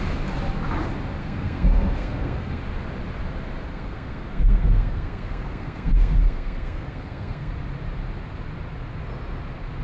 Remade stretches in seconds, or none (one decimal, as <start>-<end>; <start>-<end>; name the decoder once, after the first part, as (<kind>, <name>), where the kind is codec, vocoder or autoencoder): 1.2-2.6 (codec, SNAC); 3.7-7.5